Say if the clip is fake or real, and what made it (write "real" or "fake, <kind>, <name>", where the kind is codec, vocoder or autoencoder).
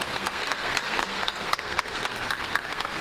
fake, codec, SNAC